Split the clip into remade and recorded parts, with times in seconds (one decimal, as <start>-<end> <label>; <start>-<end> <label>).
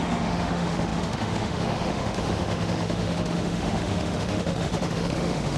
0.0-5.6 remade